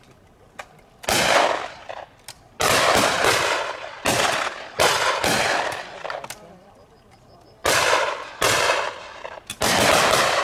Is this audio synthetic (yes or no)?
no